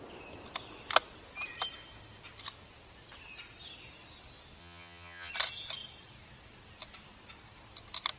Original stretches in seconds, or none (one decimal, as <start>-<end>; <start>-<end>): 0.0-4.6; 5.3-8.2